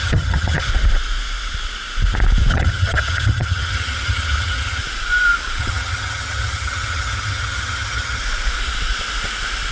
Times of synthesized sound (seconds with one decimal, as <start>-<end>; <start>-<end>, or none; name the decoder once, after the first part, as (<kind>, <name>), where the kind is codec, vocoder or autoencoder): 0.0-0.7 (vocoder, HiFi-GAN); 2.5-4.8; 5.6-8.2